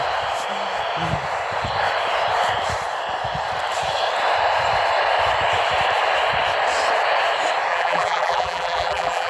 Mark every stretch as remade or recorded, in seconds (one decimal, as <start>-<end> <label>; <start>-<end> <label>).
0.0-7.7 recorded; 7.7-9.3 remade